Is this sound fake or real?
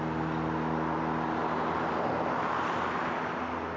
real